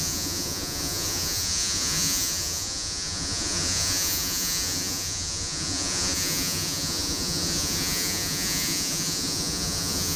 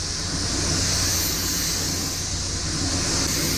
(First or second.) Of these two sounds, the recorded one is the second